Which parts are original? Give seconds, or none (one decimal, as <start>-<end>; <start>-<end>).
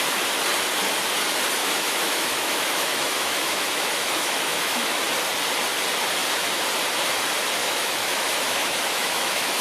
0.0-1.6; 5.0-7.6